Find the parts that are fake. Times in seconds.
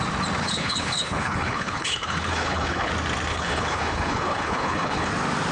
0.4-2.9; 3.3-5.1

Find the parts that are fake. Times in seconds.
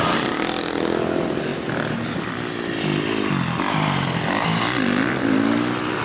none